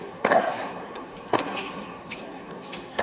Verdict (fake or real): fake